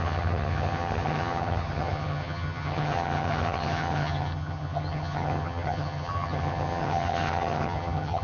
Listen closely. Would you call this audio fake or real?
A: fake